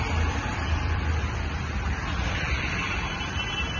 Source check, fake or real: fake